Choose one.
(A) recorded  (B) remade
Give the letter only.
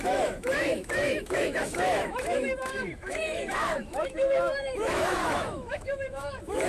B